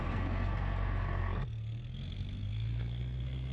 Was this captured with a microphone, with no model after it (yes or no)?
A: no